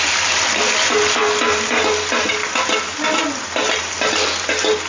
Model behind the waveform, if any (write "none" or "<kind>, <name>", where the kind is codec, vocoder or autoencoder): none